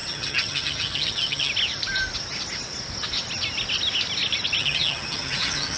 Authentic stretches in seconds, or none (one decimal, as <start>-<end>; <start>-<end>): 1.5-4.6